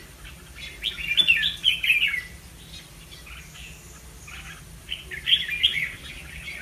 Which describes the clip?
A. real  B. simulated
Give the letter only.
A